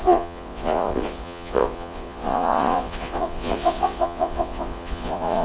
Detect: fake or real fake